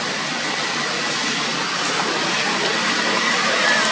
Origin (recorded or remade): recorded